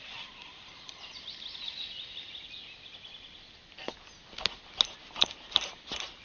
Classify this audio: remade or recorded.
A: recorded